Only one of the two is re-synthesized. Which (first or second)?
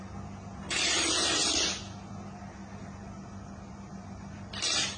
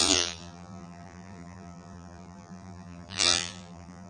second